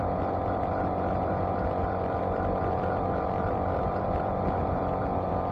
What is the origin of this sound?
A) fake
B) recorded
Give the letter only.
A